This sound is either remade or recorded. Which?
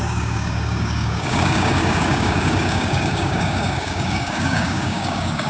remade